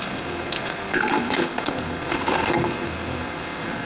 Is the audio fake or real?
fake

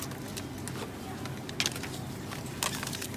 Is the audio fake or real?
real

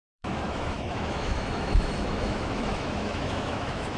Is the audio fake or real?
fake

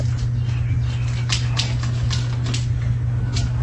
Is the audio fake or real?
real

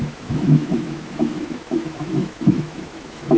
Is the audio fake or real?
fake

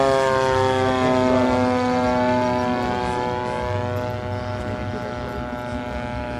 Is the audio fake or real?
real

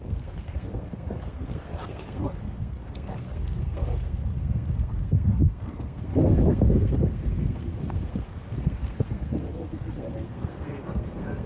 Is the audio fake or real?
fake